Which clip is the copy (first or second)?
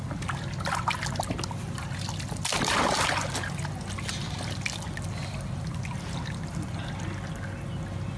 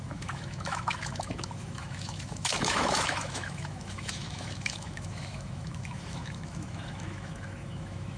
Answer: second